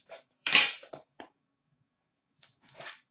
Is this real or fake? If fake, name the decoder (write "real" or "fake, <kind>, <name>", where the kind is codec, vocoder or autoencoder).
fake, codec, DAC